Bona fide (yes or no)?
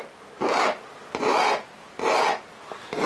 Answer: yes